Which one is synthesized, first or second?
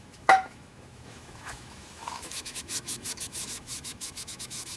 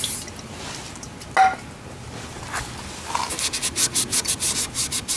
first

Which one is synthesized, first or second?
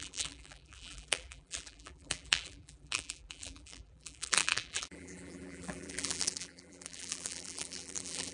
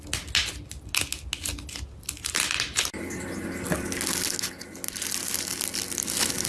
first